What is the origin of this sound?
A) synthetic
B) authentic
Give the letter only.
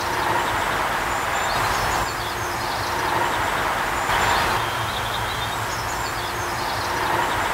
B